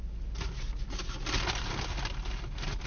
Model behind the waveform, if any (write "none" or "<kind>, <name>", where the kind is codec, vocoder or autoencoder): none